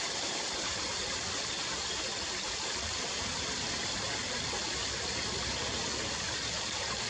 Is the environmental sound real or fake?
real